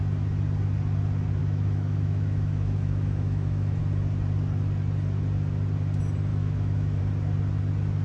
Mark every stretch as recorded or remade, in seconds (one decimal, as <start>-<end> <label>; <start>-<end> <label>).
0.0-1.4 recorded; 1.4-3.8 remade; 3.8-6.3 recorded; 6.3-7.0 remade; 7.0-8.0 recorded